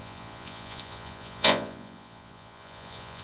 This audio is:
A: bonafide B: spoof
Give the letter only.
B